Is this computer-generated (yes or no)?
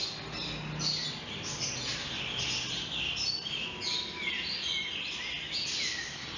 no